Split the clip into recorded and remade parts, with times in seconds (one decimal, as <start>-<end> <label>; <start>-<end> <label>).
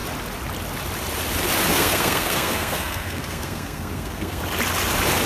0.0-1.7 recorded; 1.7-4.4 remade; 4.4-5.3 recorded